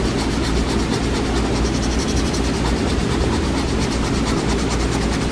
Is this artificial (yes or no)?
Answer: no